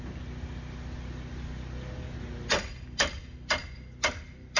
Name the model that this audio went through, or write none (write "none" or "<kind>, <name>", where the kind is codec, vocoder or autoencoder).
none